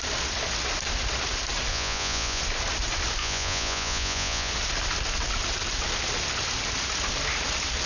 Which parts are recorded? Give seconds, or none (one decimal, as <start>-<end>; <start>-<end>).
0.0-1.7; 2.4-3.2; 4.5-7.9